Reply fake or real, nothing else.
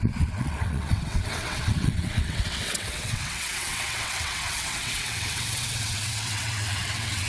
fake